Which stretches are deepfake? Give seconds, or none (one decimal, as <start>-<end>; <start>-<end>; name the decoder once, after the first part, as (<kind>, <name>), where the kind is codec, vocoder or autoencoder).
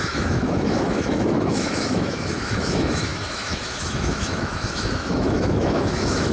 0.0-6.3 (autoencoder, DAC-VAE)